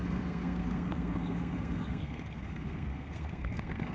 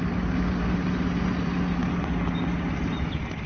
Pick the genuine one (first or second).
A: second